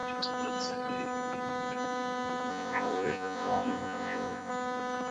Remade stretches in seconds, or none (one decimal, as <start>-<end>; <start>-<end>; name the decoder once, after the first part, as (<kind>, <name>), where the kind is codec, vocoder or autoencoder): 2.5-4.5 (vocoder, Vocos)